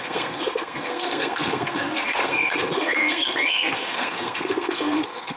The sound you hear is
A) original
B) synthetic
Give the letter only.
B